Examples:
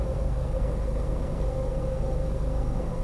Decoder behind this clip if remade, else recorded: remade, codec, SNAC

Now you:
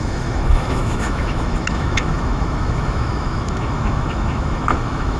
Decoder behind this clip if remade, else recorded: remade, autoencoder, DAC-VAE